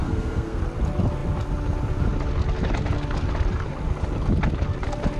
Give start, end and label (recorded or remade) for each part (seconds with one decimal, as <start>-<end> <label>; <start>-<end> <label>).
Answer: 0.0-0.6 remade; 0.6-5.2 recorded